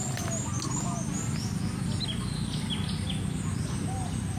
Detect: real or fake real